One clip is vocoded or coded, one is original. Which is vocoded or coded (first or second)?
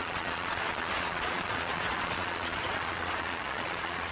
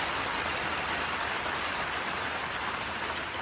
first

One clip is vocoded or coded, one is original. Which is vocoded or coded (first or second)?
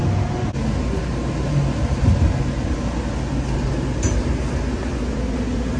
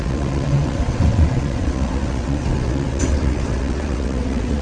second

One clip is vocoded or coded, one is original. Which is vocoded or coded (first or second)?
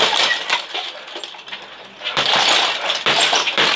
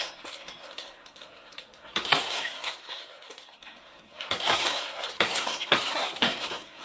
second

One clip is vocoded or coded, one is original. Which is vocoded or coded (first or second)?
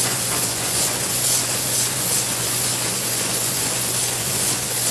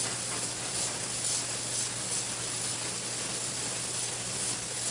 first